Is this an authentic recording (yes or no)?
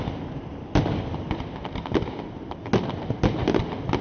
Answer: yes